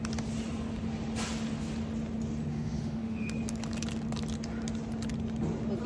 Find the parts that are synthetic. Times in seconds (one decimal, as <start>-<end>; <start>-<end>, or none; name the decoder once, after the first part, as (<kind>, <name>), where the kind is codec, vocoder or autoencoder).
2.5-3.3 (autoencoder, DAC-VAE)